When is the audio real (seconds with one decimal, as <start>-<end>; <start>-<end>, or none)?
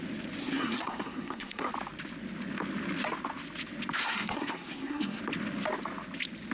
0.0-0.4; 1.7-4.0; 5.2-6.5